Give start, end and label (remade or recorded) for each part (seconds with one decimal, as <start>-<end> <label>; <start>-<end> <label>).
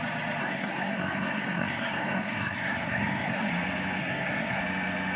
0.0-0.4 recorded; 0.4-3.5 remade; 3.5-4.0 recorded; 4.0-4.6 remade; 4.6-5.2 recorded